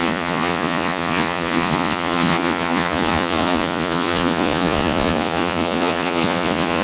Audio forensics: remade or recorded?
remade